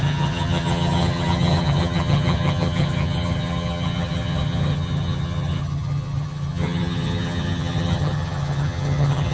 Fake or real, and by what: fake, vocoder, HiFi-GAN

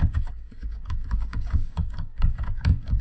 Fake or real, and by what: fake, codec, DAC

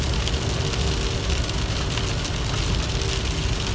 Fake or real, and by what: real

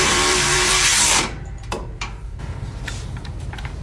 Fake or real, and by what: fake, vocoder, BigVGAN v2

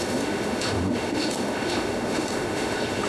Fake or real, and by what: fake, autoencoder, DAC-VAE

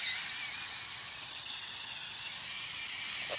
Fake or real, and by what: real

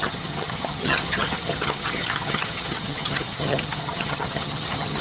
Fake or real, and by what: fake, vocoder, HiFi-GAN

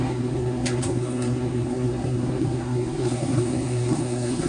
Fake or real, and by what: fake, codec, SNAC